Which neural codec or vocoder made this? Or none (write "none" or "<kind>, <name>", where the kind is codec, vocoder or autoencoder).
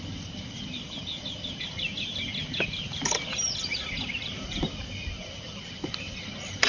none